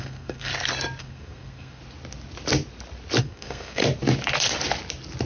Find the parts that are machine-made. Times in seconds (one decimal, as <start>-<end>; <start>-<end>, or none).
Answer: 0.0-0.5; 1.0-1.8; 3.2-3.8